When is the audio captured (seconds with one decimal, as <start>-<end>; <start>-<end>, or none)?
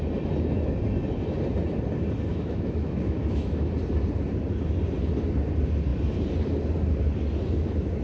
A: 0.0-2.3; 3.6-8.0